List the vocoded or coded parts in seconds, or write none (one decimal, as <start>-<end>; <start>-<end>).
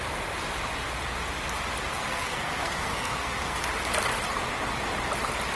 1.9-3.6